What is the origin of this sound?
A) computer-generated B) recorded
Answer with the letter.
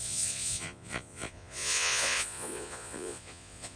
A